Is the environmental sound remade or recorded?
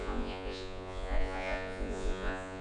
remade